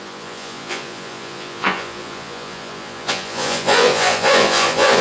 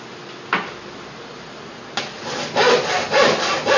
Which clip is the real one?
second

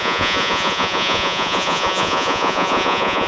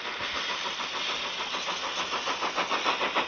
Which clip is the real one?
second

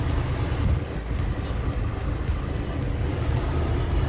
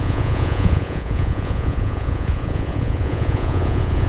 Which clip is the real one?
first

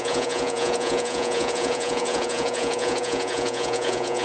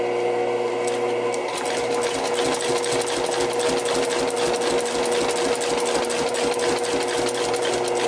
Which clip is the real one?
second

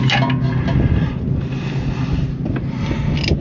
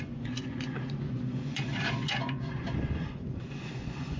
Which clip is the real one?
first